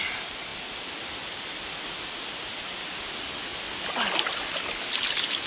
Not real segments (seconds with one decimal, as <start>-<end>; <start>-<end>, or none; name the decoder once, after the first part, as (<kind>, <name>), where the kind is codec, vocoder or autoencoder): none